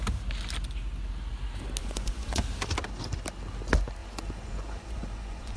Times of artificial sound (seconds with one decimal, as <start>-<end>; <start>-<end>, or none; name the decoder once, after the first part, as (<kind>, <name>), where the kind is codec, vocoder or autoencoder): 1.8-2.4 (vocoder, Vocos); 4.0-5.6